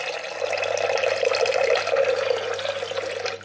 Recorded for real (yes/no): yes